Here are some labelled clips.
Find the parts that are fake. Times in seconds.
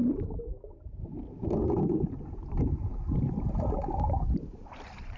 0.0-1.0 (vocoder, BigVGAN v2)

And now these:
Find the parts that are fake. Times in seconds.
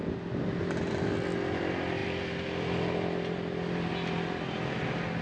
none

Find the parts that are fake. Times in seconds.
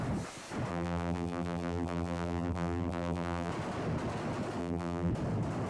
0.7-3.5 (vocoder, BigVGAN v2); 4.6-5.1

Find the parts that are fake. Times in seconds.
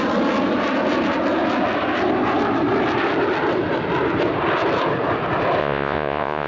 5.6-6.5 (vocoder, Vocos)